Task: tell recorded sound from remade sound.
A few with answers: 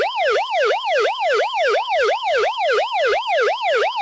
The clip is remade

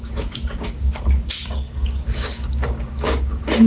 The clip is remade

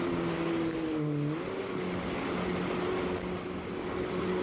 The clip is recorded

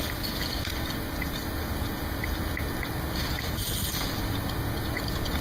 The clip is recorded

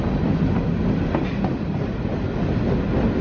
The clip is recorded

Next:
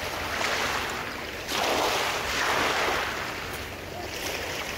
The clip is recorded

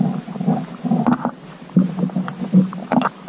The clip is recorded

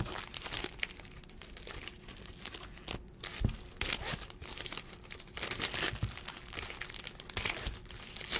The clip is recorded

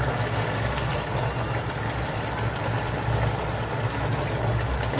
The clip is recorded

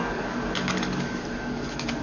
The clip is remade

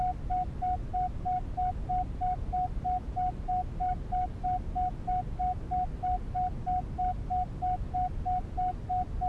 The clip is recorded